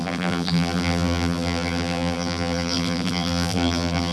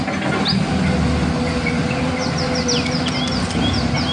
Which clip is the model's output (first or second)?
first